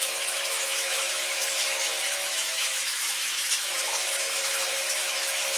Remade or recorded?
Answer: remade